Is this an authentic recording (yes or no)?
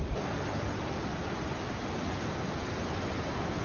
yes